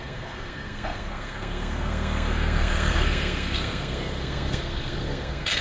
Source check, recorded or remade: remade